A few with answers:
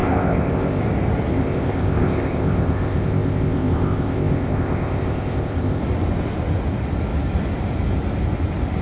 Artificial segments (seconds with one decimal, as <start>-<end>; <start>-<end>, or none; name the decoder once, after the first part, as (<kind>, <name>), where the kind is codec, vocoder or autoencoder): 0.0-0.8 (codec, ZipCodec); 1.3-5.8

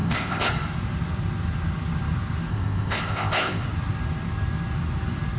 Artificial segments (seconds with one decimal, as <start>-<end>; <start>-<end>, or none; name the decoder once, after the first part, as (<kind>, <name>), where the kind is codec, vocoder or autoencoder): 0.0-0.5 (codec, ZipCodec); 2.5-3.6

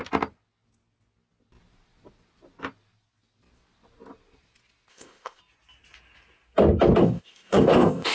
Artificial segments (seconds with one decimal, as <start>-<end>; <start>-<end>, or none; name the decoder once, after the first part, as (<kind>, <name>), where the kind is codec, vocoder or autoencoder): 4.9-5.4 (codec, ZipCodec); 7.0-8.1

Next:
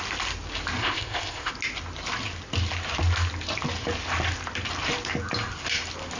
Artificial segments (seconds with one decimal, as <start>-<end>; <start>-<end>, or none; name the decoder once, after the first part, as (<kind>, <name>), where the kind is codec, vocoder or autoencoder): 0.8-1.5 (codec, ZipCodec)

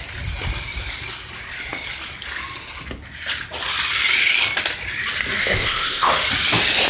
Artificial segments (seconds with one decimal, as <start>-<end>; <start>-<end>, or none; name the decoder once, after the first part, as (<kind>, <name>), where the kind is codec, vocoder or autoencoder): 5.4-6.1 (codec, ZipCodec)

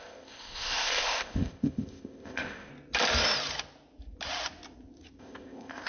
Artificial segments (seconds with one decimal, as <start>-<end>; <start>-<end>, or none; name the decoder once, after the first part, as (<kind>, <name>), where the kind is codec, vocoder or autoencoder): 0.0-2.7 (codec, ZipCodec); 5.2-5.9